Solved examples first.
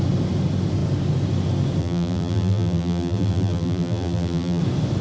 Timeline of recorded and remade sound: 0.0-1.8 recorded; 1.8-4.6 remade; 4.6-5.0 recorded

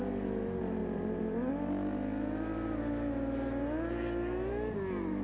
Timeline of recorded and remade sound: 0.0-0.8 recorded; 0.8-1.5 remade; 1.5-5.2 recorded

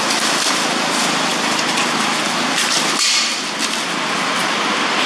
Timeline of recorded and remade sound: 0.0-5.1 recorded